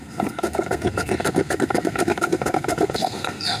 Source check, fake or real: fake